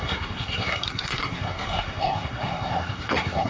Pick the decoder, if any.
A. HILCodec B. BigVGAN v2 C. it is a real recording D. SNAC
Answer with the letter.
D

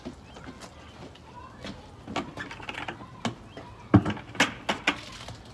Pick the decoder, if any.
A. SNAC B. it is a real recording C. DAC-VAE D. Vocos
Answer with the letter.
B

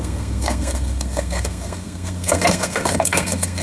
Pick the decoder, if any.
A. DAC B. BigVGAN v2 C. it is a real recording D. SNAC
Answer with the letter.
D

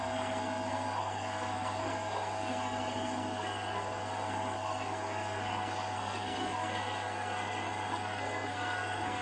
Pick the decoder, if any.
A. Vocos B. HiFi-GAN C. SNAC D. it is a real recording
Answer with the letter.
C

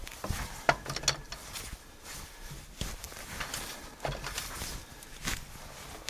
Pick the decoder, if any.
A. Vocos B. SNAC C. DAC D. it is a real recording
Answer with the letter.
D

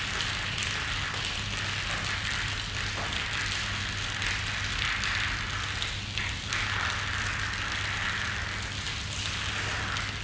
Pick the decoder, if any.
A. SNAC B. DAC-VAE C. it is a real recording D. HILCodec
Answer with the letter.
C